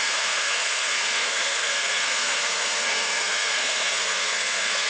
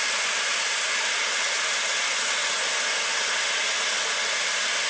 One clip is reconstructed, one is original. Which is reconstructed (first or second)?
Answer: first